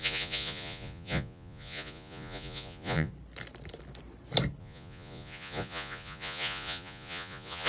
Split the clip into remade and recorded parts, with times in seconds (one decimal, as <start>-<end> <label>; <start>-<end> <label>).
0.0-3.1 remade; 3.1-4.6 recorded; 4.6-7.7 remade